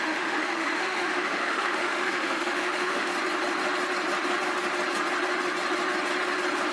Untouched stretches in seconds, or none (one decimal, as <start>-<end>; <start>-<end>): 3.1-6.7